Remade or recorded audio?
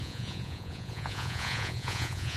remade